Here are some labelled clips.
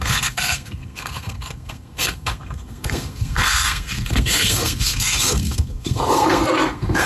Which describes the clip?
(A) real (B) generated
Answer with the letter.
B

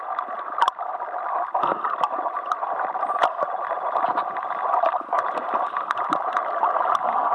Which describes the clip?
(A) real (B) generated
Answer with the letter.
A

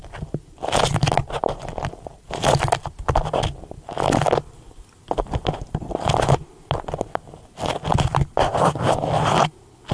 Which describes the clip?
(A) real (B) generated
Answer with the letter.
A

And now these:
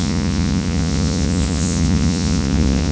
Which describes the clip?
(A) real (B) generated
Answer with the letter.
B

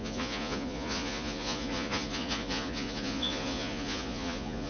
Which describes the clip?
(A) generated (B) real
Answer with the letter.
A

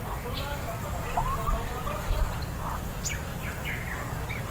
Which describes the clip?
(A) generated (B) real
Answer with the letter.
B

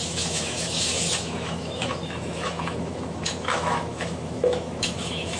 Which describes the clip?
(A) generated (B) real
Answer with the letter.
A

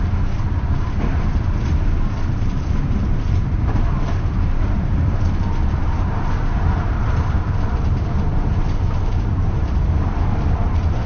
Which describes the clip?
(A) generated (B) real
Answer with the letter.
A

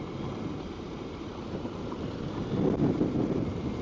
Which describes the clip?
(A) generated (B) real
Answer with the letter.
A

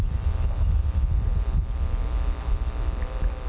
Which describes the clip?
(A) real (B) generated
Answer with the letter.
A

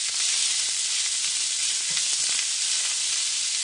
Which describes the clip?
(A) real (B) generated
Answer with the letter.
A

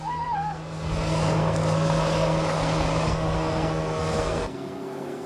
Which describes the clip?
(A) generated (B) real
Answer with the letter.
A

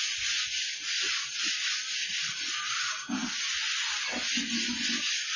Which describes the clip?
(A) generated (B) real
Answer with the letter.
B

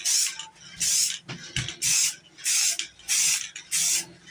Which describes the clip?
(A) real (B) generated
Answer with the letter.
A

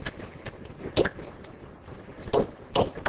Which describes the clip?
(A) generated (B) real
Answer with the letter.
B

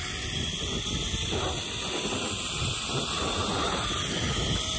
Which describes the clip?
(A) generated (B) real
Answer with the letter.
B